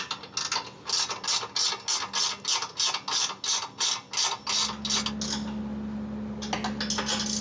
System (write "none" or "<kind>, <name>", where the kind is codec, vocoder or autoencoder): none